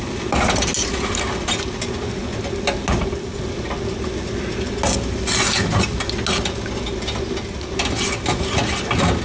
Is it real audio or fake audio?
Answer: real